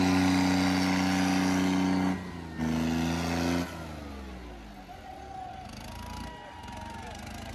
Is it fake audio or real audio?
real